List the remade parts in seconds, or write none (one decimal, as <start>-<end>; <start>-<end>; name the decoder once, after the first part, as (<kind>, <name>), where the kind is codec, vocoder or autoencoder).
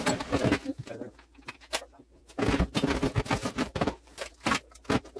3.4-4.3 (vocoder, BigVGAN v2)